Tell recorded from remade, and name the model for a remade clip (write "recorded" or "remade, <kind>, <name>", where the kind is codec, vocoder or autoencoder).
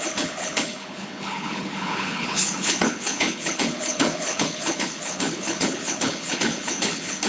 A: remade, codec, HILCodec